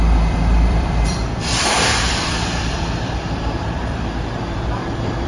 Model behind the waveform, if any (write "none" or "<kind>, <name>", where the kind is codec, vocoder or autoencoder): vocoder, BigVGAN v2